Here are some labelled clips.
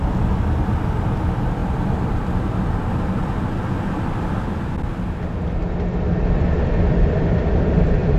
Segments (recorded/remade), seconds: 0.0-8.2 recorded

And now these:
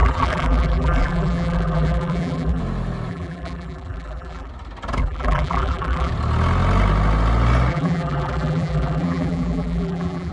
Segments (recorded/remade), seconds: 0.0-2.6 remade; 2.6-3.1 recorded; 3.1-4.5 remade; 4.5-5.0 recorded; 5.0-6.1 remade; 6.1-7.7 recorded; 7.7-10.3 remade

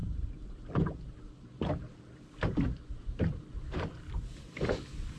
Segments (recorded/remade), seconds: 0.0-0.7 remade; 0.7-5.2 recorded

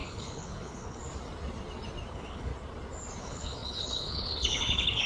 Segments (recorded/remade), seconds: 0.0-1.0 remade; 1.0-2.1 recorded; 2.1-2.5 remade; 2.5-3.2 recorded; 3.2-5.1 remade

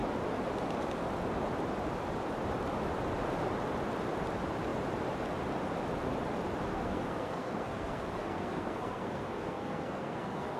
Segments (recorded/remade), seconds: 0.0-6.7 recorded; 6.7-10.6 remade

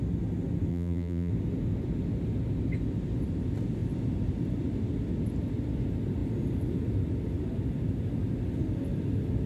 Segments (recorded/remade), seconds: 0.0-0.7 recorded; 0.7-1.3 remade; 1.3-9.5 recorded

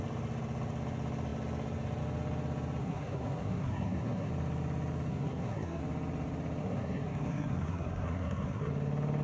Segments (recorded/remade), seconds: 0.0-2.8 recorded; 2.8-4.3 remade; 4.3-5.1 recorded; 5.1-5.8 remade; 5.8-6.6 recorded; 6.6-8.7 remade; 8.7-9.2 recorded